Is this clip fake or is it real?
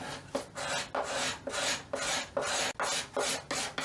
real